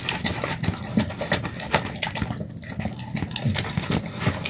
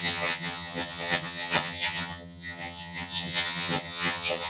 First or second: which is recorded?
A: first